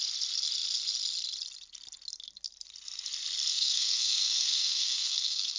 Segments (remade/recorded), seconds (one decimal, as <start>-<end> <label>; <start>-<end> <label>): 0.0-3.5 recorded; 3.5-5.6 remade